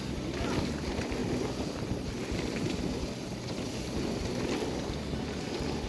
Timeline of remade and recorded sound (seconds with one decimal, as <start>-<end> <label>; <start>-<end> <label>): 0.0-5.9 recorded